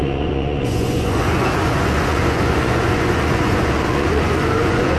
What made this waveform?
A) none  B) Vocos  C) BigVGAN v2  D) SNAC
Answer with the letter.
B